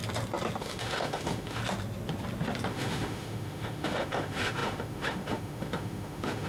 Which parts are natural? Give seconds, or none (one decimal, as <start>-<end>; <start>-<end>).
0.0-0.6; 1.6-2.7